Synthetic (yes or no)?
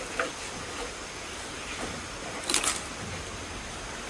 no